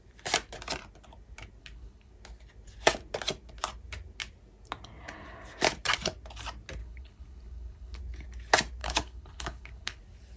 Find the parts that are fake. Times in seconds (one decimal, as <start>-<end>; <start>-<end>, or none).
1.6-2.1; 6.8-8.0; 8.8-10.0